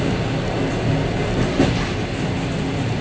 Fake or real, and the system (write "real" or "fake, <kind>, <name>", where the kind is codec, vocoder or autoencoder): real